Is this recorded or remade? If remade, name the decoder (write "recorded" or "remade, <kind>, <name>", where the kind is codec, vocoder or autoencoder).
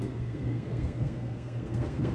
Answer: remade, codec, SNAC